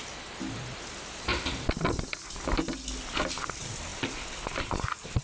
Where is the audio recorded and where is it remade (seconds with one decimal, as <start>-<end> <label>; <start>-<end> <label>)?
0.0-5.2 recorded